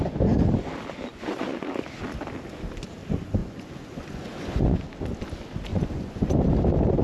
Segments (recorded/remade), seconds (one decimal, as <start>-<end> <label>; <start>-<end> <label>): 0.0-1.1 recorded; 1.1-1.7 remade; 1.7-3.4 recorded; 3.4-4.8 remade; 4.8-5.7 recorded; 5.7-6.3 remade; 6.3-7.0 recorded

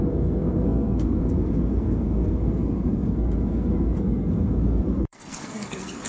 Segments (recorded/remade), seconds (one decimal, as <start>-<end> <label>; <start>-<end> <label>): 0.0-6.1 remade

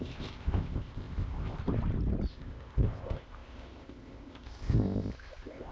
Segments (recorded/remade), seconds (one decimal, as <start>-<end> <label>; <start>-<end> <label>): 0.0-1.6 remade; 1.6-2.3 recorded; 2.3-5.7 remade

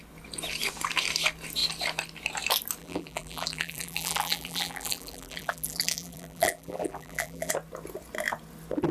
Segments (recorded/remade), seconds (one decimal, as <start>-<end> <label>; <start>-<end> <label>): 0.0-2.8 recorded; 2.8-7.5 remade; 7.5-8.9 recorded

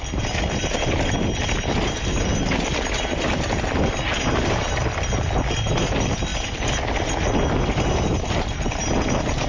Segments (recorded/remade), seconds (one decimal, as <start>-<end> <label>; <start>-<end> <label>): 0.0-9.5 recorded

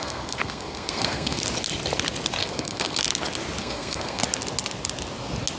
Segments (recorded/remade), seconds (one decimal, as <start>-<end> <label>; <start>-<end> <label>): 0.0-1.4 remade; 1.4-2.4 recorded; 2.4-3.0 remade; 3.0-3.6 recorded; 3.6-4.2 remade; 4.2-5.6 recorded

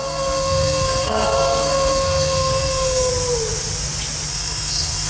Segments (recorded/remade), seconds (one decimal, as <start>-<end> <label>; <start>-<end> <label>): 0.0-3.1 remade; 3.1-4.3 recorded; 4.3-5.1 remade

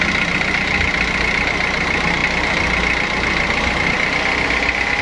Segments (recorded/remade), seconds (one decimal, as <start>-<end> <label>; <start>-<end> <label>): 0.0-5.0 recorded